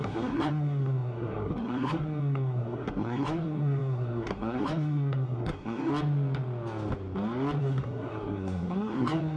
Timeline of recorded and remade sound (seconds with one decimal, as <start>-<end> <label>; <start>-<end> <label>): 0.0-5.9 remade; 5.9-7.6 recorded; 7.6-9.4 remade